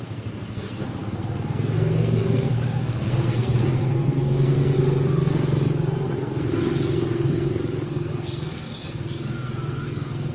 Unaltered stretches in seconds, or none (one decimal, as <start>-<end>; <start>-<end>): none